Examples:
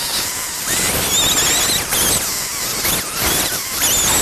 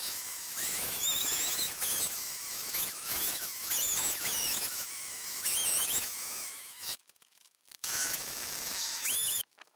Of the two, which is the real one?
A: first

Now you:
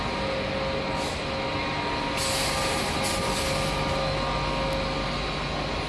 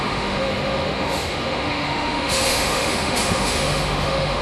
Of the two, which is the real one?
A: first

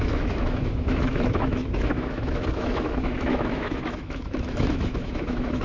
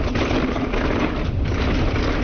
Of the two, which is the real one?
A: second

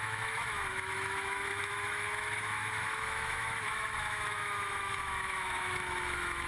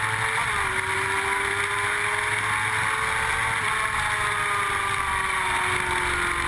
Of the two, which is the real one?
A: second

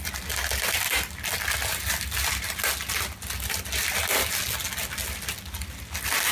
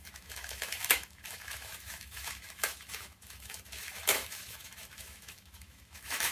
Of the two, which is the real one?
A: first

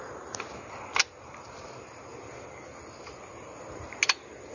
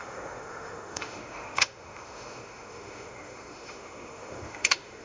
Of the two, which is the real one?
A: first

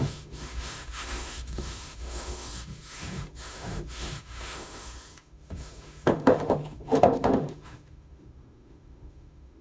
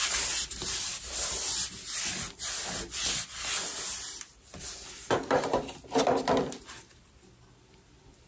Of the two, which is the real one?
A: second